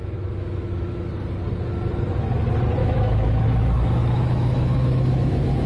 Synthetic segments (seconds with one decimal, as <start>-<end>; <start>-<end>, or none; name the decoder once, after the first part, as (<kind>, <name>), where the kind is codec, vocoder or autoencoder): 0.0-1.1 (autoencoder, DAC-VAE); 2.8-5.7